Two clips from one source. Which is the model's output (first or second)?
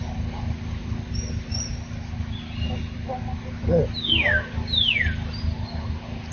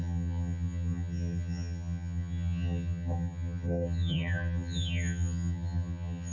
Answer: second